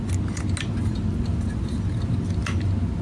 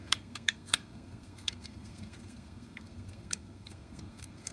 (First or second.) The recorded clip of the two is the first